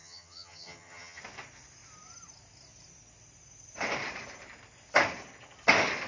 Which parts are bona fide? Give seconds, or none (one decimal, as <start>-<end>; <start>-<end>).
1.2-6.1